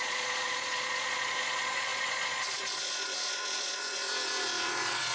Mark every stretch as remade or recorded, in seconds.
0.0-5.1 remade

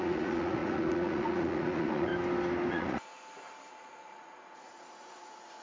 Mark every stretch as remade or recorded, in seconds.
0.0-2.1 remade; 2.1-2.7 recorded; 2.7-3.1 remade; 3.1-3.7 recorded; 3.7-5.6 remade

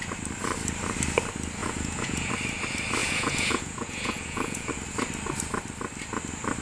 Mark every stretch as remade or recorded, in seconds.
0.0-1.6 recorded; 1.6-2.3 remade; 2.3-3.0 recorded; 3.0-4.7 remade; 4.7-6.6 recorded

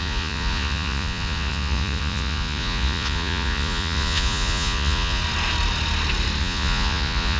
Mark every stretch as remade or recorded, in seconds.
0.0-5.2 remade; 5.2-6.4 recorded; 6.4-7.4 remade